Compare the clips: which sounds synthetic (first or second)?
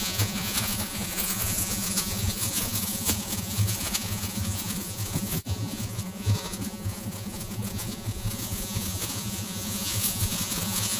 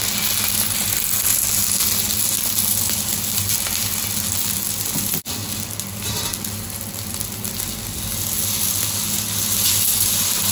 first